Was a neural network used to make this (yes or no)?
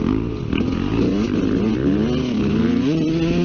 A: no